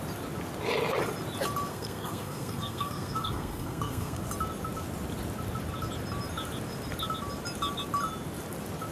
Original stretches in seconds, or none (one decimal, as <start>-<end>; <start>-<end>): 0.0-1.7; 4.2-8.9